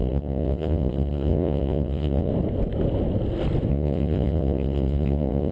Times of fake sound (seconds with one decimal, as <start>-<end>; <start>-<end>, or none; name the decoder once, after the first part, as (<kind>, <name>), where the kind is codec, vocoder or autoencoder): 0.0-2.3 (vocoder, Vocos); 3.7-5.5